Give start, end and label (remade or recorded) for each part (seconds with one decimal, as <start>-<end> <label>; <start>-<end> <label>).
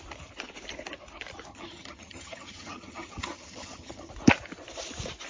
0.0-1.5 recorded; 1.5-4.1 remade; 4.1-5.3 recorded